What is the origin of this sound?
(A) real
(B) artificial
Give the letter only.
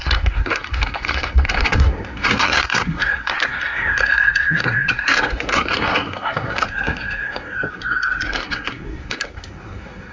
B